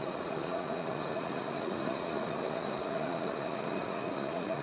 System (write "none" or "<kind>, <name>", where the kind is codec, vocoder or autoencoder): vocoder, Vocos